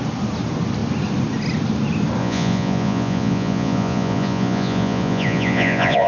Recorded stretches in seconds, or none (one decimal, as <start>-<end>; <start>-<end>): 0.0-2.2